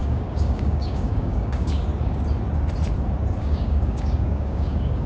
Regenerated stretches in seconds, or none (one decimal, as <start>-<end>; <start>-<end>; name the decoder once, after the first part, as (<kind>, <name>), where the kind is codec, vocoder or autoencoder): 0.0-1.9 (codec, DAC); 3.4-5.1